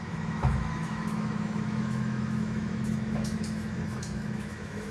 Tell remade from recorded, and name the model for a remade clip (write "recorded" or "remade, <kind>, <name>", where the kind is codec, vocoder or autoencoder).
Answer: remade, autoencoder, DAC-VAE